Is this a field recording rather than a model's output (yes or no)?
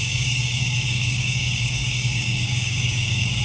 no